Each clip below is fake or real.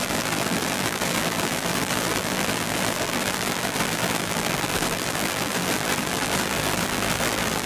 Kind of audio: fake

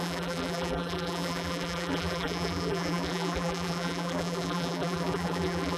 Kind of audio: fake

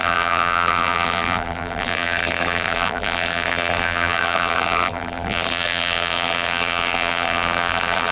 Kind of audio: fake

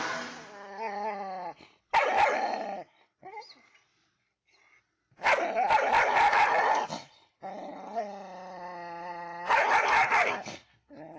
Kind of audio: real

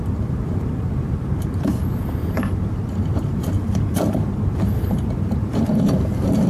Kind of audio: fake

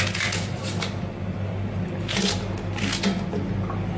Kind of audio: real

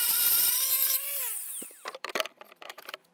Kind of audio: fake